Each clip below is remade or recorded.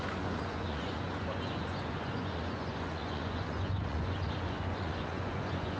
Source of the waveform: remade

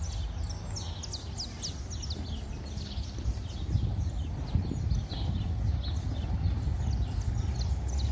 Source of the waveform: recorded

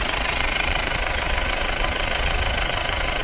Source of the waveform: remade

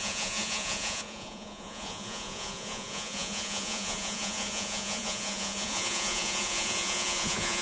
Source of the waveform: remade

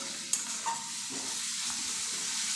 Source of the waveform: recorded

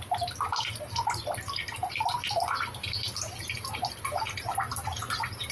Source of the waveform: recorded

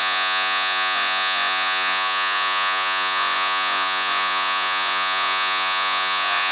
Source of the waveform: remade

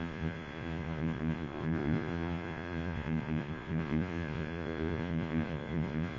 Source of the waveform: remade